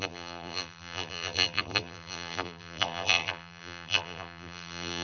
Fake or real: fake